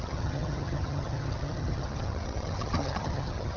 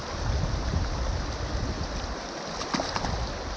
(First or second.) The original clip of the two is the second